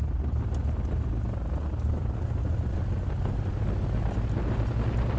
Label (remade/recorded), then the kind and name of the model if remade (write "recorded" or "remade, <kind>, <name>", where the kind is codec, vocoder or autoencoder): recorded